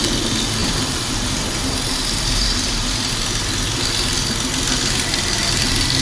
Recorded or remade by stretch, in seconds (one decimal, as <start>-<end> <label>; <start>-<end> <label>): 0.0-0.6 recorded; 0.6-3.1 remade; 3.1-6.0 recorded